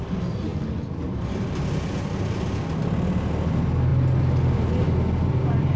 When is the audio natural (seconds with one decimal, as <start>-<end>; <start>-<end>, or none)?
0.0-5.8